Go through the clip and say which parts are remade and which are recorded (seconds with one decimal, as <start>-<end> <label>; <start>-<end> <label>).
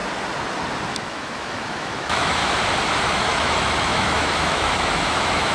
0.0-0.9 recorded; 0.9-2.4 remade; 2.4-3.0 recorded; 3.0-5.5 remade